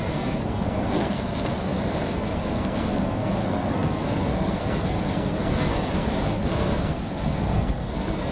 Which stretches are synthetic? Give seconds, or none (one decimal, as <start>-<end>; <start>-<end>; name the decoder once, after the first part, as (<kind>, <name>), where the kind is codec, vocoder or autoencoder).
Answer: 0.0-8.3 (codec, SNAC)